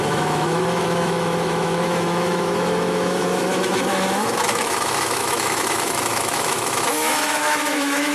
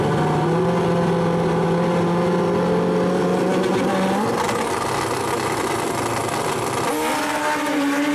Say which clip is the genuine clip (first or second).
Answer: second